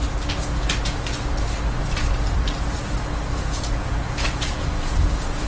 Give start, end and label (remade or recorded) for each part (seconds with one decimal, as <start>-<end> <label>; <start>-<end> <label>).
0.0-3.3 recorded; 3.3-5.5 remade

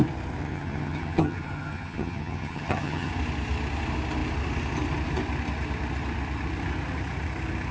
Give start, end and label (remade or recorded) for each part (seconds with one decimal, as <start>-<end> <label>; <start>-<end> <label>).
0.0-0.4 recorded; 0.4-3.1 remade; 3.1-7.7 recorded

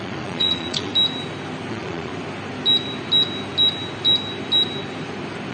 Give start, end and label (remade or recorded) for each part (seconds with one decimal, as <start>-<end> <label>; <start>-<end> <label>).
0.0-0.9 remade; 0.9-1.7 recorded; 1.7-2.1 remade; 2.1-5.5 recorded